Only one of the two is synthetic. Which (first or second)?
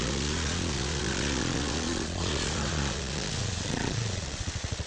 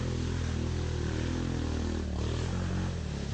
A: first